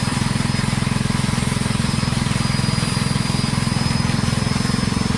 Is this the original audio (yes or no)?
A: no